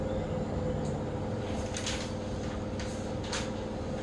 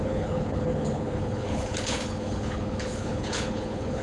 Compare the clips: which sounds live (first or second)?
first